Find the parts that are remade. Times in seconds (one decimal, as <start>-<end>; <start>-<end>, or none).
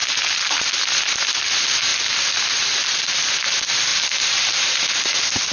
3.9-4.8